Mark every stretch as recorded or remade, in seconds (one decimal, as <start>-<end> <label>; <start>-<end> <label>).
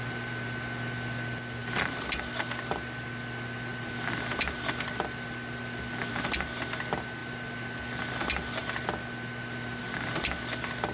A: 0.0-10.9 recorded